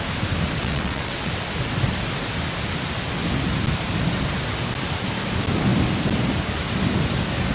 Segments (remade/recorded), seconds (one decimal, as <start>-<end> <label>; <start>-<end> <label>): 0.0-0.6 recorded; 0.6-1.3 remade; 1.3-7.5 recorded